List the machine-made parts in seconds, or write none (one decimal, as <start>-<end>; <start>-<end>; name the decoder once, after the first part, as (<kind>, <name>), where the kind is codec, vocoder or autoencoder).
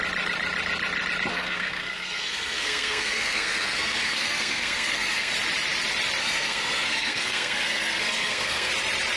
1.3-5.3 (codec, SNAC); 6.2-8.7